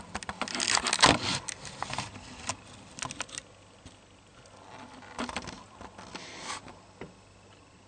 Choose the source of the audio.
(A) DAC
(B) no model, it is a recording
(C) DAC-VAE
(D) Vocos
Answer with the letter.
B